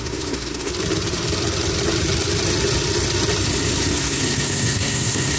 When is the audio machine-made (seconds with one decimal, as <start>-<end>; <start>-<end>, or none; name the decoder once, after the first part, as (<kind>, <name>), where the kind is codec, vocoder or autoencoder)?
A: 0.0-0.7 (codec, SNAC); 3.9-5.4